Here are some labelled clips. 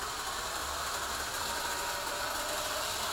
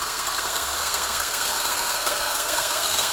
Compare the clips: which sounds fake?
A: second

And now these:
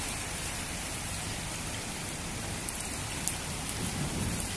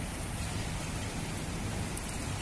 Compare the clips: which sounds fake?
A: first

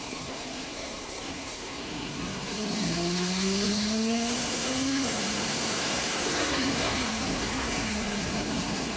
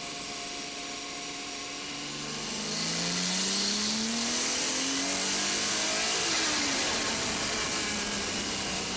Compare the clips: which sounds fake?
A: first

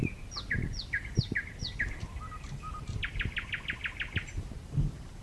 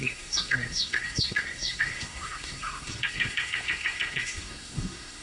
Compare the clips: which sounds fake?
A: second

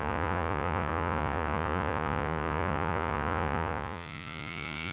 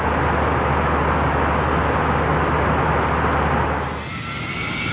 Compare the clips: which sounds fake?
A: first